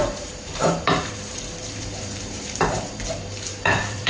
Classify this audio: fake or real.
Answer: fake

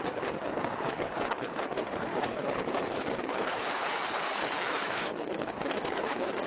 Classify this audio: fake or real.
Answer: fake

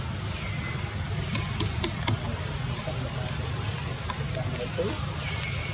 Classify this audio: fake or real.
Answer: real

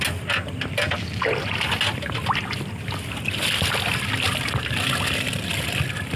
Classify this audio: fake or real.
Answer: real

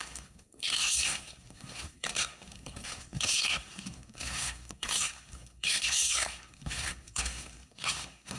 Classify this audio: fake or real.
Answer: fake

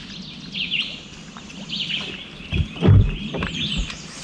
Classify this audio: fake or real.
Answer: real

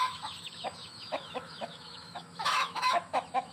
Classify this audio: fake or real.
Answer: fake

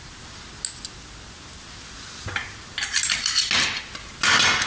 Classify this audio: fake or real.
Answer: real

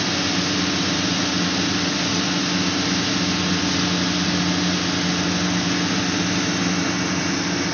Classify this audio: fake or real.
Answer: real